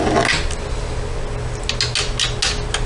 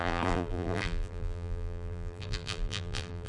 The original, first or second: first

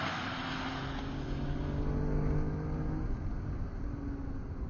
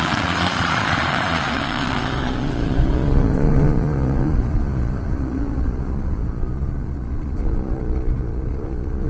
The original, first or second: first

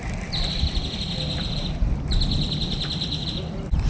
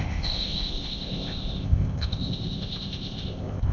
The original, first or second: first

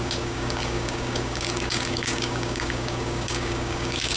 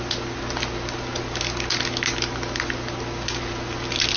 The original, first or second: second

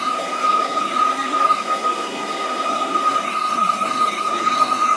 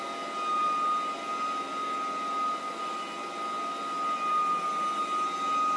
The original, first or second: second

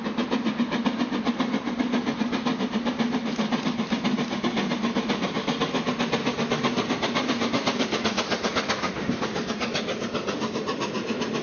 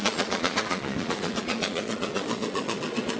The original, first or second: first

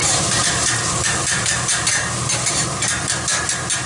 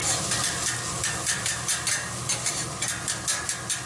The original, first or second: second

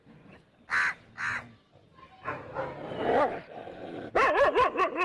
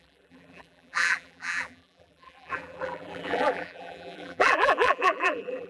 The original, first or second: first